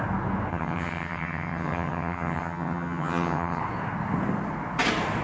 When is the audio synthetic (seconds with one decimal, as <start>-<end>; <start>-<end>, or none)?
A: 0.5-3.6